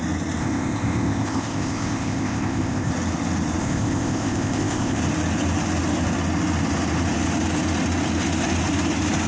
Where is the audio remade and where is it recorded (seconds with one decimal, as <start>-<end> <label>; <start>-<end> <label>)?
0.0-0.4 recorded; 0.4-2.9 remade; 2.9-3.6 recorded; 3.6-5.0 remade; 5.0-9.3 recorded